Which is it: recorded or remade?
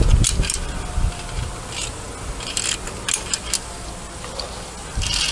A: recorded